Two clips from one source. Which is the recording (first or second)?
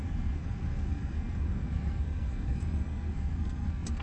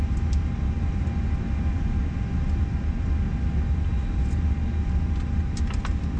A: second